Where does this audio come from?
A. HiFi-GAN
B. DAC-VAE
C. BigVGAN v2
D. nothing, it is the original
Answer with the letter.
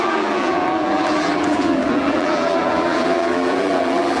C